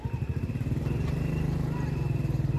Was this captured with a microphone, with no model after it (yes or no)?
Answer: no